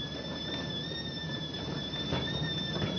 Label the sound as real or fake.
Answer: fake